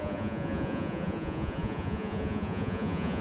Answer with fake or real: fake